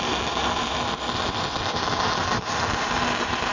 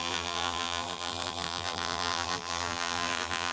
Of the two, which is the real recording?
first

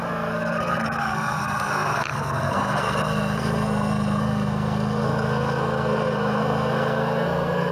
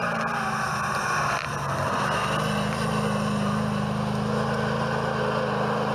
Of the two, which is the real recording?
second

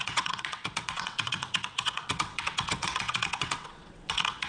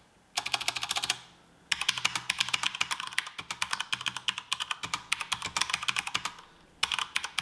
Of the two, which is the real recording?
second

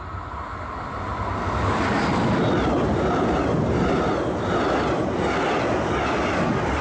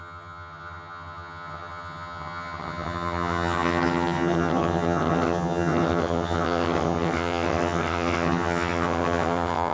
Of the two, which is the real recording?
first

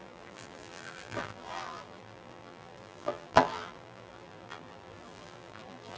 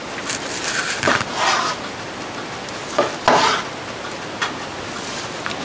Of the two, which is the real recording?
second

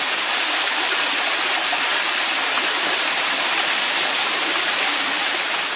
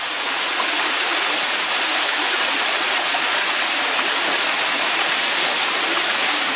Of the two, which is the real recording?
first